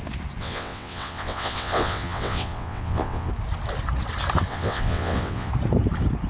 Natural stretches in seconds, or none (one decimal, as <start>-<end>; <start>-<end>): 0.0-0.4; 3.3-4.5; 5.5-6.3